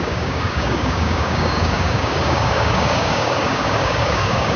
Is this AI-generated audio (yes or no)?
yes